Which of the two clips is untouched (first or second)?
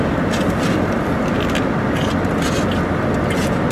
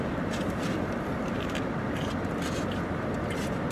first